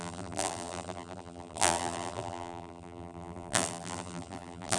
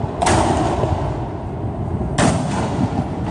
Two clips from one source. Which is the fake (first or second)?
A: first